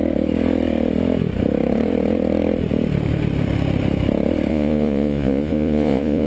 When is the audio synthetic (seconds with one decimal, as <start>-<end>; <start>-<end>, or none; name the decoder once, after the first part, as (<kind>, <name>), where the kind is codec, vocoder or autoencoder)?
4.5-6.3 (vocoder, Vocos)